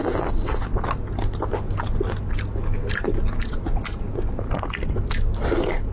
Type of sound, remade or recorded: recorded